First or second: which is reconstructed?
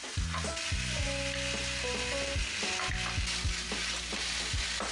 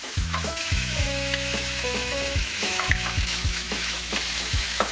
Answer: second